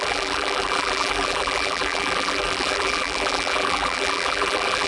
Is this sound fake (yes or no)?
yes